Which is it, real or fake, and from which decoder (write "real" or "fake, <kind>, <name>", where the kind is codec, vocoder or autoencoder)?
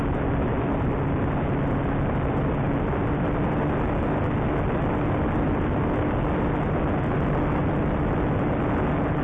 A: real